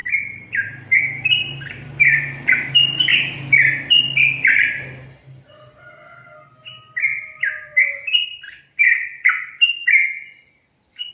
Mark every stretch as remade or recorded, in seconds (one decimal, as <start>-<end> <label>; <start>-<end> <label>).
0.0-2.7 remade; 2.7-11.1 recorded

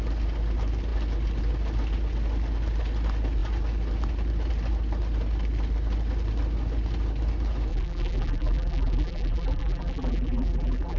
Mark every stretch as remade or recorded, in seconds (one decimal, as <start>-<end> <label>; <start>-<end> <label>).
0.0-7.7 recorded; 7.7-11.0 remade

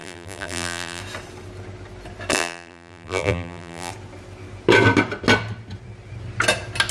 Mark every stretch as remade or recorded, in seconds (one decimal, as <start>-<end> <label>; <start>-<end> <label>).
0.0-1.0 remade; 1.0-2.3 recorded; 2.3-3.9 remade; 3.9-6.9 recorded

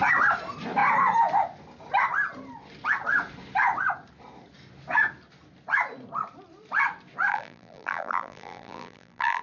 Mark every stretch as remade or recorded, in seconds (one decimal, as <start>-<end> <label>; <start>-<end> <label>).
0.0-7.3 recorded; 7.3-9.4 remade